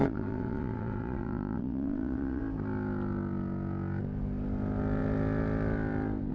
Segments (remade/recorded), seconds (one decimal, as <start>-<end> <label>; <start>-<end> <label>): 0.0-2.4 remade; 2.4-6.3 recorded